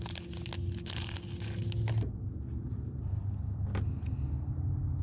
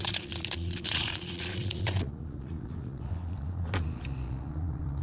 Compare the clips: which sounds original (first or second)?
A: first